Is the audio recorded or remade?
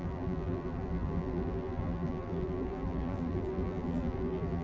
remade